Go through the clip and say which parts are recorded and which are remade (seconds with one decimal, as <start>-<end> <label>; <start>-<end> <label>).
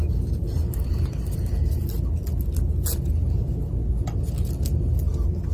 0.0-5.5 recorded